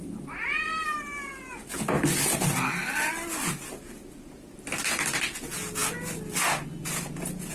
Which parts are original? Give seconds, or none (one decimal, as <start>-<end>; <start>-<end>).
0.0-7.5